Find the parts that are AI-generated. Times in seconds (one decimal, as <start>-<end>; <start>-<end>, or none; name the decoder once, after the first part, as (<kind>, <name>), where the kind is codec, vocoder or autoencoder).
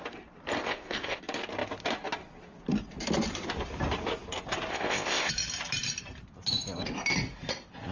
0.6-1.2 (codec, ZipCodec); 4.7-5.3